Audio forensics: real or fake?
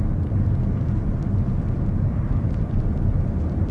real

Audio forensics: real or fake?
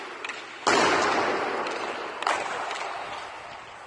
real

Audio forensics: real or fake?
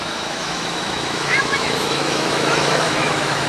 fake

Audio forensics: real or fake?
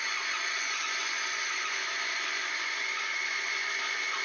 fake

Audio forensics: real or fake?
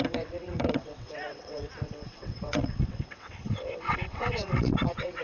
fake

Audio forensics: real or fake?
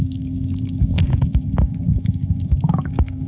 fake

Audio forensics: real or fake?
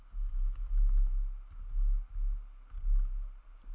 real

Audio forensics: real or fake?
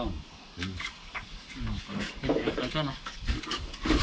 fake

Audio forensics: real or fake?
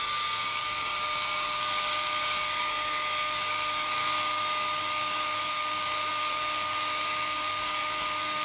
fake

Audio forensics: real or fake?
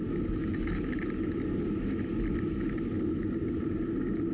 real